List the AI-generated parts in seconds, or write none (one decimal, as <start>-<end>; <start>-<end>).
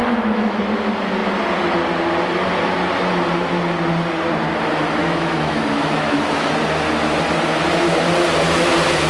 0.0-0.6; 5.0-6.5